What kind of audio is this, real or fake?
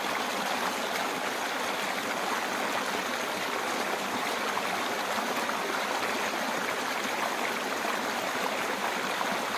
real